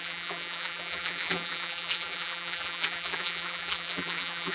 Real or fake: fake